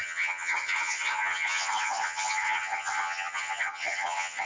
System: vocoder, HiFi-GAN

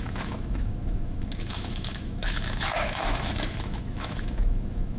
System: autoencoder, DAC-VAE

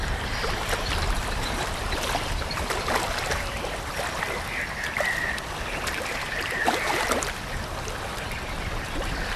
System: none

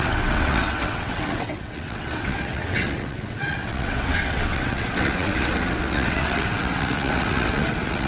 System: vocoder, WaveNeXt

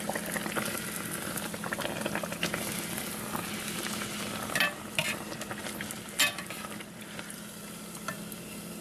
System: none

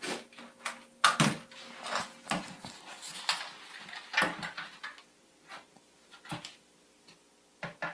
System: none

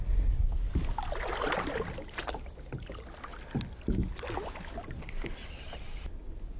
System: none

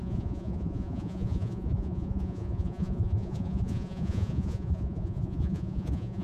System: vocoder, Vocos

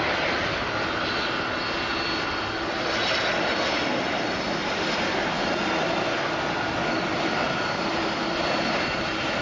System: none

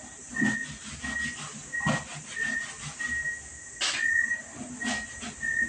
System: none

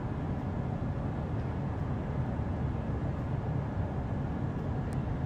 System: none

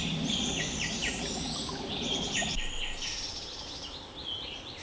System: none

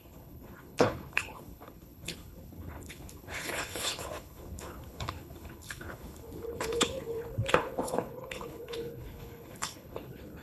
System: codec, HILCodec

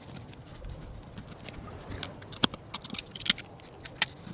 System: none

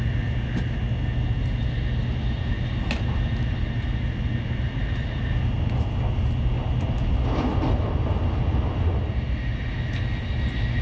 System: none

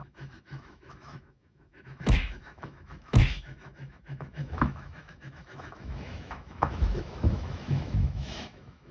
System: autoencoder, DAC-VAE